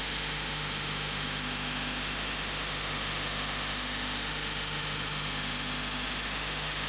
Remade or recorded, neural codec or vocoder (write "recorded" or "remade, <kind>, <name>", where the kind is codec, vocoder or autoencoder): remade, autoencoder, DAC-VAE